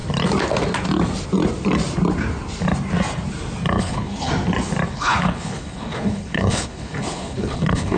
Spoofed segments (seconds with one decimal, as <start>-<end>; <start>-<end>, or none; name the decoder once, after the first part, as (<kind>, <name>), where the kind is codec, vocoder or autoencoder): 3.8-4.3 (codec, HILCodec); 4.9-8.0

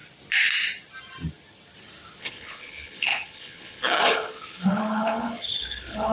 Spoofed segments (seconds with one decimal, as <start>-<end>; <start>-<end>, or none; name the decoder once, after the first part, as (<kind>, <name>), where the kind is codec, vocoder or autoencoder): 2.2-6.1 (codec, HILCodec)